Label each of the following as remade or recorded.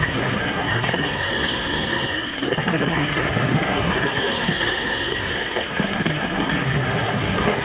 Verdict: remade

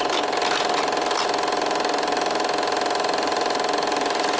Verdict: recorded